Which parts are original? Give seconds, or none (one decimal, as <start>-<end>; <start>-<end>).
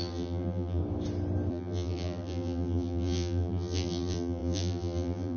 0.8-1.5